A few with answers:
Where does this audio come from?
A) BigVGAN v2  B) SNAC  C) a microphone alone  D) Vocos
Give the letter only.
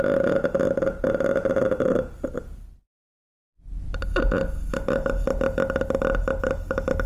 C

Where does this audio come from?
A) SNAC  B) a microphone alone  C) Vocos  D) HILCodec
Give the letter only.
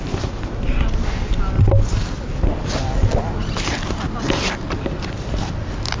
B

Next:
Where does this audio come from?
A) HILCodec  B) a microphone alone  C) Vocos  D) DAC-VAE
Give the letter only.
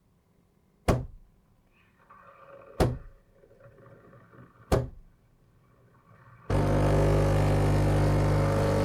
B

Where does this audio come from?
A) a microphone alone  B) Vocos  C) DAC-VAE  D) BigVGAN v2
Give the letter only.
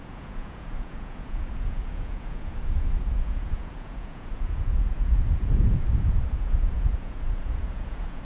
B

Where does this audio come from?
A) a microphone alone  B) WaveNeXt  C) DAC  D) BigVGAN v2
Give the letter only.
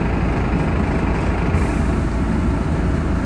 A